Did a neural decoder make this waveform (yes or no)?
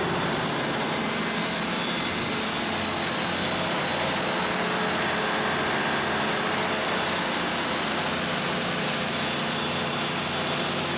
no